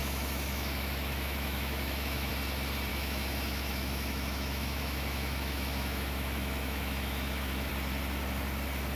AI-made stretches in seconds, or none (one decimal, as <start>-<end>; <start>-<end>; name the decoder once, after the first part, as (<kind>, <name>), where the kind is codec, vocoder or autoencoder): 0.0-2.3 (autoencoder, DAC-VAE); 2.9-7.7